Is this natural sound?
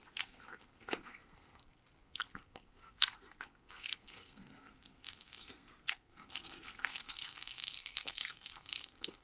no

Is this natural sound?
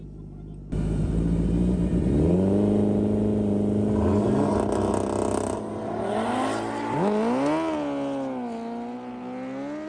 yes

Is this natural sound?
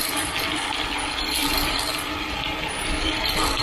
yes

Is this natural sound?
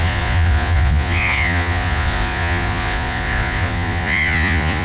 no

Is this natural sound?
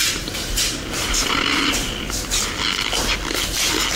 yes